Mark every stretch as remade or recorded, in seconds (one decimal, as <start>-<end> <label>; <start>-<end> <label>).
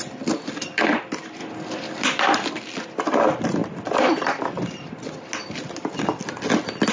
0.0-6.9 recorded